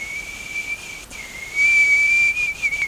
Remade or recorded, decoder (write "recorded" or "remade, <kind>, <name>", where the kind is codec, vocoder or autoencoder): remade, vocoder, BigVGAN v2